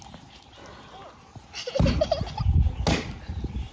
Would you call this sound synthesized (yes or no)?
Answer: no